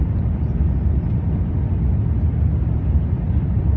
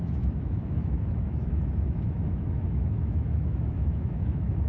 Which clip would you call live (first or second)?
first